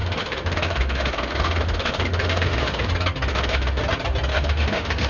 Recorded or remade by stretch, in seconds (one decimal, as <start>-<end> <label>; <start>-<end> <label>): 0.0-2.9 remade; 2.9-3.3 recorded; 3.3-3.8 remade; 3.8-4.3 recorded; 4.3-5.1 remade